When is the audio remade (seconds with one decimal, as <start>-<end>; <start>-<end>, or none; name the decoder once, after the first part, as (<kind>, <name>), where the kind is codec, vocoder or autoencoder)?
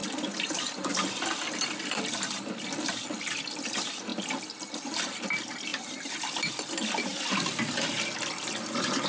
0.0-2.0 (vocoder, BigVGAN v2); 5.7-6.5; 7.1-7.9